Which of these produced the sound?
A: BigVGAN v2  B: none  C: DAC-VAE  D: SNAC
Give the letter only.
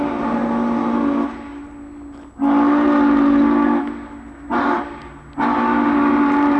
B